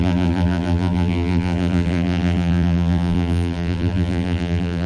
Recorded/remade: remade